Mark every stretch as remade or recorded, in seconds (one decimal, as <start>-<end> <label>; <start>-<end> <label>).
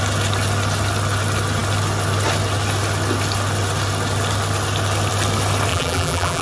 0.0-5.7 recorded; 5.7-6.4 remade